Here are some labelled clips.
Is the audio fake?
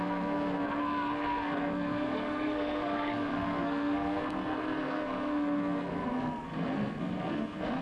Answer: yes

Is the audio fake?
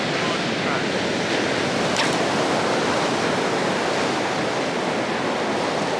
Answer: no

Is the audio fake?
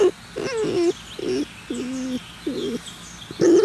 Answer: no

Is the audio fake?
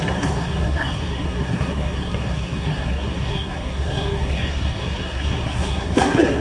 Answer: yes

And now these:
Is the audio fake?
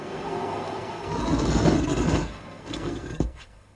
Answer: yes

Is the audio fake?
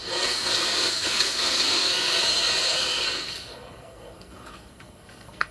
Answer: yes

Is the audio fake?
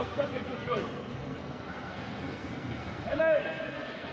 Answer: yes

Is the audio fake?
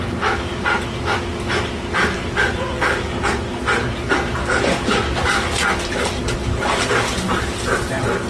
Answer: no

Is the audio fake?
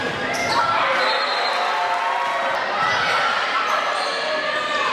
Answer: no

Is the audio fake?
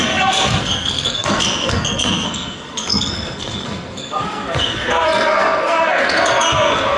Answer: yes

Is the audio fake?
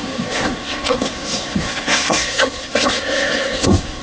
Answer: yes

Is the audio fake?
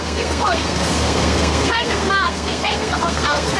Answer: yes